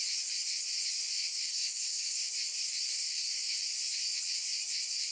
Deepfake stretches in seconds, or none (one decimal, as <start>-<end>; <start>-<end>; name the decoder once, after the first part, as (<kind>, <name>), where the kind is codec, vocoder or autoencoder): 1.2-2.3 (codec, SNAC); 2.9-3.6